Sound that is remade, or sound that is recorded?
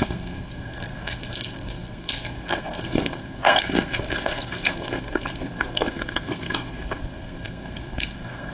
remade